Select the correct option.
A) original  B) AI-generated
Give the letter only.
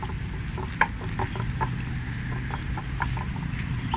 A